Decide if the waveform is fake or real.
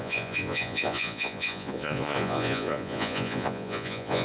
fake